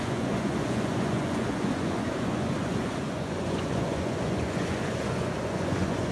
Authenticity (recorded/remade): remade